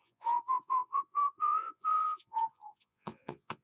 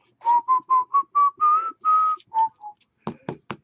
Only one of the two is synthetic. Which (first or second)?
first